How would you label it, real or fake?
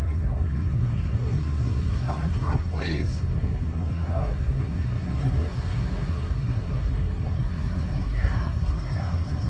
fake